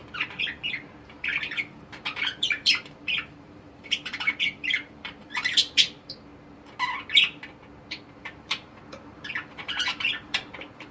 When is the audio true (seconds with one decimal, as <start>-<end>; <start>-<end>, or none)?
6.3-8.1

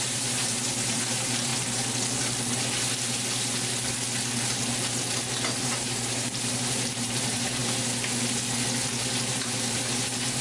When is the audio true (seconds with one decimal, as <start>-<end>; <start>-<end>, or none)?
1.5-5.6; 7.6-9.3

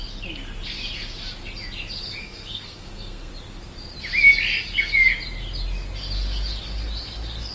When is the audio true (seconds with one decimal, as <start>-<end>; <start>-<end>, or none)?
0.0-2.2; 3.3-7.5

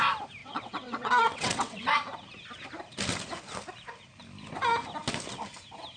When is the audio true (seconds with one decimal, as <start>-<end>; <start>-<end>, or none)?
0.0-0.4; 1.8-6.0